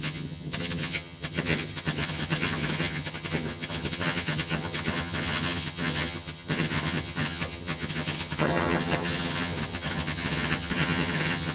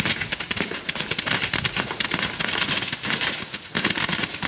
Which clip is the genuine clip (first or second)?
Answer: second